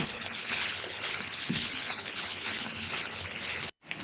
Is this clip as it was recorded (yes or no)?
no